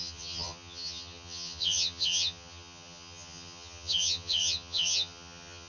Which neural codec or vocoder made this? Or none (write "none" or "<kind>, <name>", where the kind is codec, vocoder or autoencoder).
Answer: vocoder, HiFi-GAN